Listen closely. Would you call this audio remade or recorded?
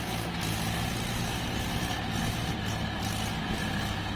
recorded